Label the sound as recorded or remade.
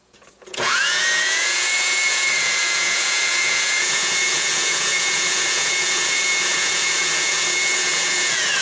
remade